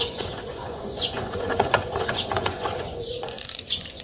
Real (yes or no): no